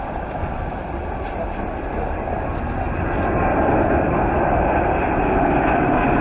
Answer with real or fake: real